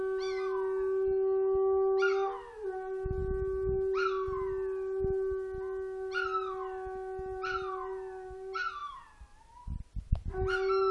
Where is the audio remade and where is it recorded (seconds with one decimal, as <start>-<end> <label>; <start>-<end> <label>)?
0.0-10.9 recorded